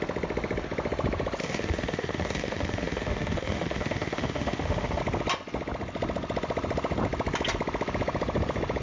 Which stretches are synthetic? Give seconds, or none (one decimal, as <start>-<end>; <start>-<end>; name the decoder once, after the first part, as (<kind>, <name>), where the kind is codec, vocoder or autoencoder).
1.4-5.0 (autoencoder, DAC-VAE)

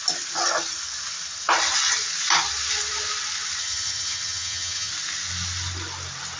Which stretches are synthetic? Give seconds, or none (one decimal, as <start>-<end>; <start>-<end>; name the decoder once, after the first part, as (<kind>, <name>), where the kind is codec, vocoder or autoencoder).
3.6-4.9 (vocoder, HiFi-GAN)

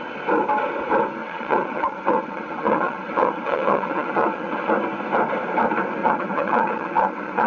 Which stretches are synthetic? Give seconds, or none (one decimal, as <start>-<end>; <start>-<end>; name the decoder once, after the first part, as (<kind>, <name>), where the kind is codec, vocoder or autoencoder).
1.2-4.7 (vocoder, WaveNeXt); 6.0-7.5

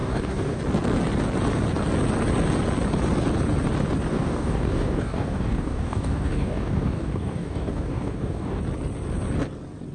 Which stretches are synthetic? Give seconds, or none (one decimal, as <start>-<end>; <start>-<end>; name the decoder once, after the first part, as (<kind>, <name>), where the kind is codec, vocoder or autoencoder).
0.0-0.6 (codec, DAC); 4.1-8.6

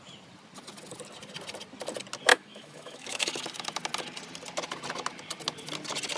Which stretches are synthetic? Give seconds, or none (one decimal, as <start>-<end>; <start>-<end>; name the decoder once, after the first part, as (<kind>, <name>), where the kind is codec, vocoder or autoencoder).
2.3-3.3 (autoencoder, DAC-VAE)

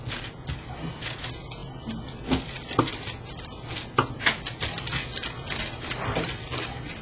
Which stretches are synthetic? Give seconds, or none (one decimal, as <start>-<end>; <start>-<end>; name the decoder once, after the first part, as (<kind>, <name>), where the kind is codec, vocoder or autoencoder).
none

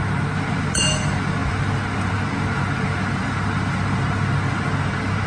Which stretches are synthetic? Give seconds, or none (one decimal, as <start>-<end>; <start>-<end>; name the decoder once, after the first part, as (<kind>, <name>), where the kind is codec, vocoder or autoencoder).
none

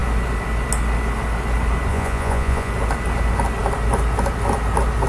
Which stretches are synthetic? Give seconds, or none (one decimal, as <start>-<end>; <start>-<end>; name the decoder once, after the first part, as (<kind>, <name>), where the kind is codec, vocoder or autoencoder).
1.9-2.7 (vocoder, Vocos)